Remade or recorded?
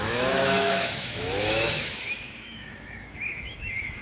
remade